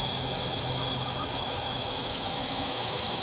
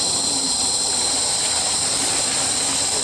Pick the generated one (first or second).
first